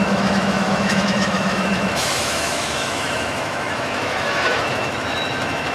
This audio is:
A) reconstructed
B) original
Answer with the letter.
A